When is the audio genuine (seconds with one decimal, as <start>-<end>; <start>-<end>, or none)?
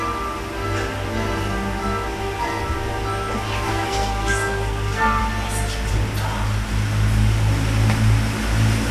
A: 0.0-3.7; 5.2-8.9